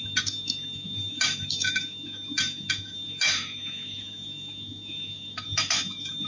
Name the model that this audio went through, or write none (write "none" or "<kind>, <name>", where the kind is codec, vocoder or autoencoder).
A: autoencoder, DAC-VAE